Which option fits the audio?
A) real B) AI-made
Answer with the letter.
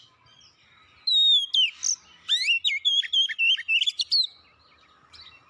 A